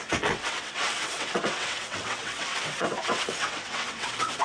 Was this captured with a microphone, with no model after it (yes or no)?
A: no